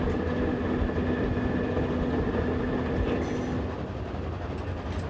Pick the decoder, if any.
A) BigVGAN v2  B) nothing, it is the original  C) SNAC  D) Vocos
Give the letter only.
B